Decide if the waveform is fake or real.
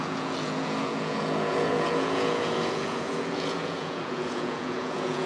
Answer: fake